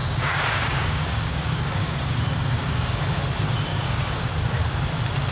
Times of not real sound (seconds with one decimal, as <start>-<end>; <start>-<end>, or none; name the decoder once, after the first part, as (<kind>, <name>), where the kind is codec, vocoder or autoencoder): 0.0-3.2 (codec, DAC); 3.7-4.3